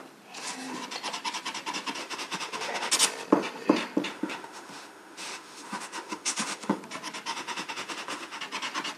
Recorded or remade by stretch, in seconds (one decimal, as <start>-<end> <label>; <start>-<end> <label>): 0.0-2.0 recorded; 2.0-2.9 remade; 2.9-4.1 recorded; 4.1-6.8 remade; 6.8-7.3 recorded; 7.3-8.4 remade; 8.4-9.0 recorded